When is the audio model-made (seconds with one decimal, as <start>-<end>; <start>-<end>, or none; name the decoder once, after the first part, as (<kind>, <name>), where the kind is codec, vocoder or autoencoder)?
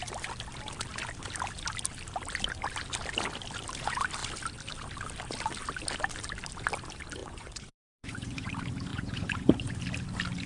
7.2-8.5 (vocoder, Vocos); 8.9-9.7